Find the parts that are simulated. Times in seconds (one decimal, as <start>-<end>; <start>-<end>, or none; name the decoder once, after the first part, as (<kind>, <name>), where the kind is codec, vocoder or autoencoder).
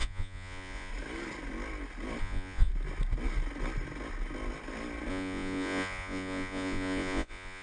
0.0-0.9 (vocoder, Vocos); 2.2-2.7; 5.1-7.6